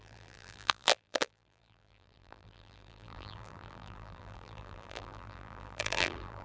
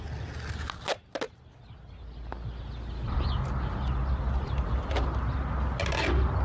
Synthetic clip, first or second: first